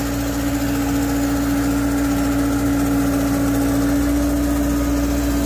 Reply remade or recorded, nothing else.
recorded